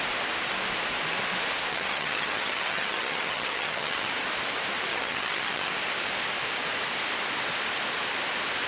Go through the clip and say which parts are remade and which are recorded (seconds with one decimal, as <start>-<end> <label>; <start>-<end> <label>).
0.0-1.7 recorded; 1.7-4.1 remade; 4.1-4.9 recorded; 4.9-5.7 remade; 5.7-8.7 recorded